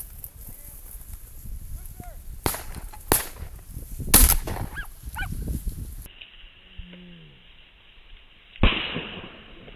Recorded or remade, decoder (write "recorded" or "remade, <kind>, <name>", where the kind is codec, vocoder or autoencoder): recorded